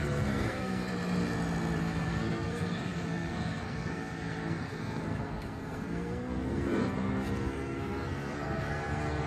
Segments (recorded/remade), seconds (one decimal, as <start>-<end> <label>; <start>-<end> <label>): 0.0-0.9 remade; 0.9-1.8 recorded; 1.8-9.3 remade